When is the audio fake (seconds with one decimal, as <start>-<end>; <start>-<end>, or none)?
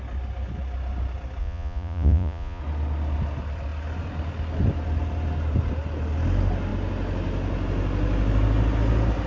1.4-2.6